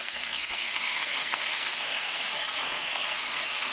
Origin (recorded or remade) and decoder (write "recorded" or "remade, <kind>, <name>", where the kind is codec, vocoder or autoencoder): remade, codec, SNAC